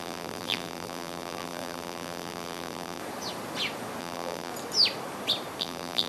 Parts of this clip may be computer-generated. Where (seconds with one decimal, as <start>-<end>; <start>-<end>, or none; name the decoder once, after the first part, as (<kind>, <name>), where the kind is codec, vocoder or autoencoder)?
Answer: 0.0-3.0 (vocoder, BigVGAN v2); 4.0-4.5; 5.6-6.1